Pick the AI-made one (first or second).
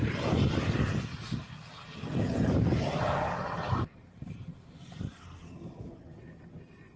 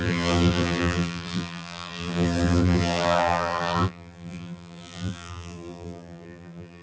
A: second